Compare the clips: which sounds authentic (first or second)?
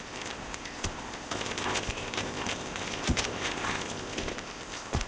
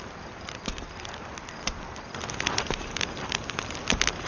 second